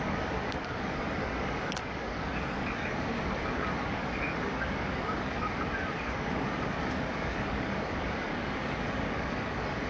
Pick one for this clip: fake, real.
fake